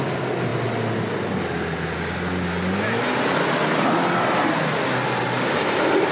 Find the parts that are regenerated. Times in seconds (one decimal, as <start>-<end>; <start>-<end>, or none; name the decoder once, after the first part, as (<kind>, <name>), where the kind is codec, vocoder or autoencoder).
none